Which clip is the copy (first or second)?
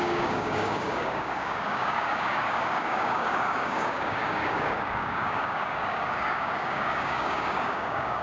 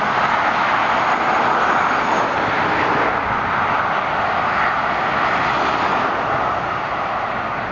first